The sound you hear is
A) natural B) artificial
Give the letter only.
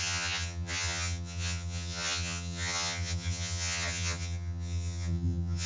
B